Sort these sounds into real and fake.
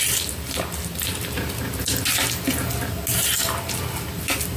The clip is real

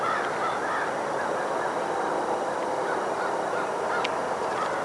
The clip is real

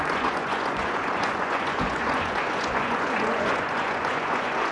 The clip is fake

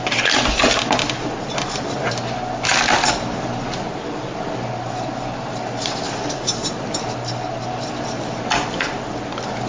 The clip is real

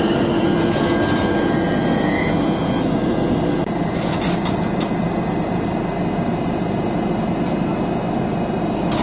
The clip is real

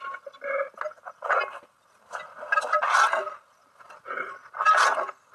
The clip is real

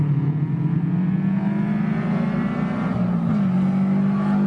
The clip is real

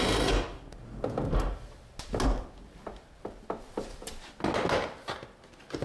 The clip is real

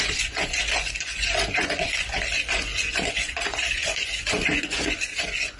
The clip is fake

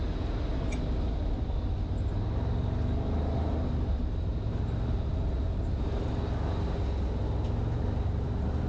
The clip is real